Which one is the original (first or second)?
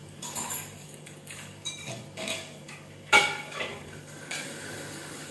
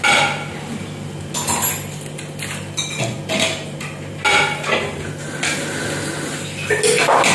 second